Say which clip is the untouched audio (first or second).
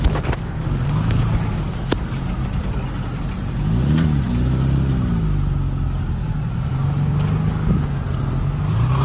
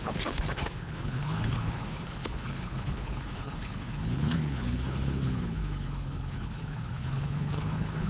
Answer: first